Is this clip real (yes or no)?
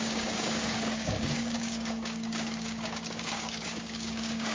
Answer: no